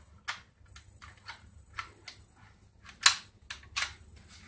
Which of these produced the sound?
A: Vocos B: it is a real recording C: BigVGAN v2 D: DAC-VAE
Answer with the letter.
B